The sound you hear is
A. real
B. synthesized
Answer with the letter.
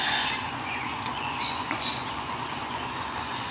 B